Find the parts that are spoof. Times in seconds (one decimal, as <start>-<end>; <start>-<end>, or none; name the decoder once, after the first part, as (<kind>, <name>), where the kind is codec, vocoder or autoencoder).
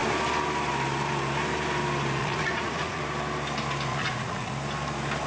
2.2-3.0 (vocoder, Vocos); 3.9-4.5